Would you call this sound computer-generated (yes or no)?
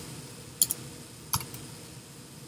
no